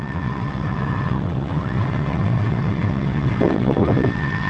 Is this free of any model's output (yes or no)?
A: no